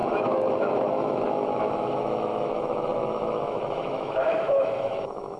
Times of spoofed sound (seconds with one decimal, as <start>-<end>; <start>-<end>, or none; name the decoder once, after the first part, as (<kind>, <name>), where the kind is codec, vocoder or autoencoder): 0.0-5.4 (autoencoder, DAC-VAE)